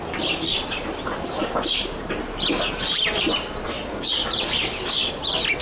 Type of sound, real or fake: real